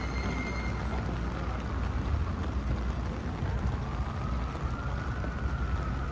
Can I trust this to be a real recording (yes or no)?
yes